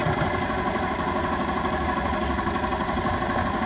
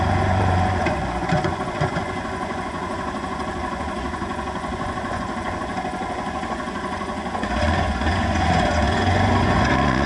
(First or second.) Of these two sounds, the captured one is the first